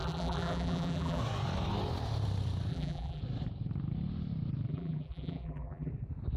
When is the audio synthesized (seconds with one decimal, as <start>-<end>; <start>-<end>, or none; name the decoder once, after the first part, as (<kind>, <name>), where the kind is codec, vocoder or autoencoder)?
0.0-1.2 (vocoder, BigVGAN v2); 2.7-3.2; 4.7-5.9